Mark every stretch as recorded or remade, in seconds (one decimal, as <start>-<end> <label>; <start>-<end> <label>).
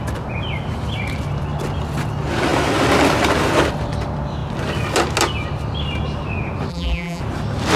0.0-6.7 recorded; 6.7-7.2 remade; 7.2-7.8 recorded